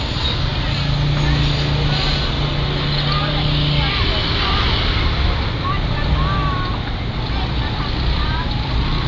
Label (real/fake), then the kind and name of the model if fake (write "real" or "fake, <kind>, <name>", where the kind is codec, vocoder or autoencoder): real